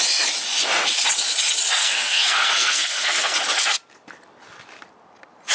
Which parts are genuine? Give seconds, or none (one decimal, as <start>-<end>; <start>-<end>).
0.0-1.8; 3.4-5.5